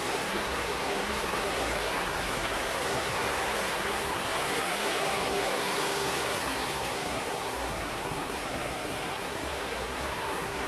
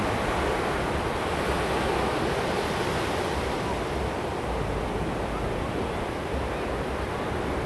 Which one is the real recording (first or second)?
second